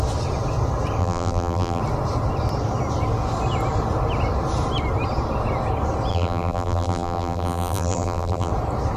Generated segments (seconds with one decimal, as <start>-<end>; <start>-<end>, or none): 1.0-1.8; 6.1-8.5